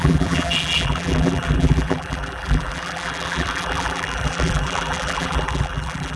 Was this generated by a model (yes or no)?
yes